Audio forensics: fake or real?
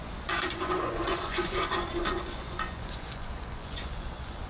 fake